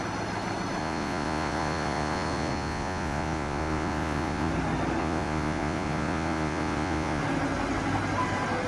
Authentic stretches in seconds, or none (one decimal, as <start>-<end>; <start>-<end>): 0.0-0.8; 4.5-5.0; 7.2-8.7